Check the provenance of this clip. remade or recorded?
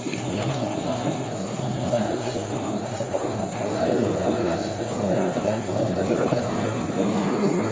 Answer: remade